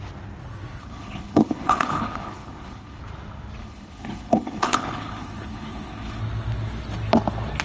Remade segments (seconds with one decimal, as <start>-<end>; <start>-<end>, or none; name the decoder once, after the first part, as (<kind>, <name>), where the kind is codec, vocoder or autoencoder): 0.8-3.0 (codec, HILCodec); 3.6-6.2